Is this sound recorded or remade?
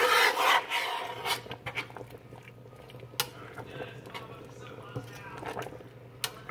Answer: recorded